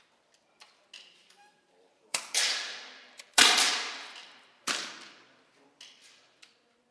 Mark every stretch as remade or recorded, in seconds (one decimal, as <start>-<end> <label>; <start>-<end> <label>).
0.0-1.2 recorded; 1.2-3.7 remade; 3.7-4.2 recorded; 4.2-4.9 remade; 4.9-6.9 recorded

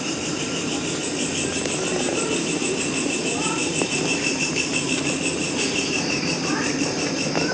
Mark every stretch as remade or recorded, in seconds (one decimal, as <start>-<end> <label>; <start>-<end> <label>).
0.0-7.5 remade

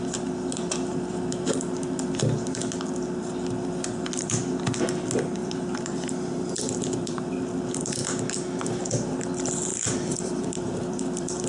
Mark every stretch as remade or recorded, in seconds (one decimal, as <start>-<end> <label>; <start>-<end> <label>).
0.0-5.4 recorded; 5.4-7.5 remade; 7.5-9.7 recorded; 9.7-11.5 remade

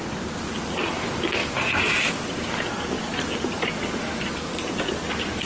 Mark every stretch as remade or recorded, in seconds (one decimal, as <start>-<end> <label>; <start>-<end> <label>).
0.0-1.4 recorded; 1.4-2.1 remade; 2.1-5.5 recorded

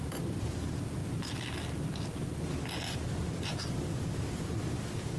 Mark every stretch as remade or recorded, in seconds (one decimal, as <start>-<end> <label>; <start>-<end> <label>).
0.0-1.0 remade; 1.0-3.6 recorded; 3.6-5.2 remade

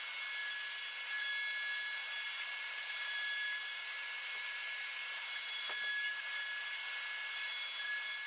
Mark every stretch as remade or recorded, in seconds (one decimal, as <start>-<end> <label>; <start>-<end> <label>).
0.0-2.0 recorded; 2.0-5.7 remade; 5.7-8.3 recorded

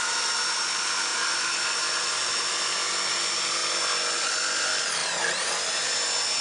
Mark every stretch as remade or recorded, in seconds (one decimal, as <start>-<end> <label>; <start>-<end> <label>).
0.0-1.1 recorded; 1.1-2.5 remade; 2.5-5.0 recorded; 5.0-5.9 remade; 5.9-6.4 recorded